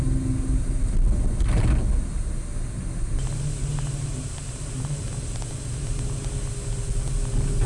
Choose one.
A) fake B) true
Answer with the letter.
B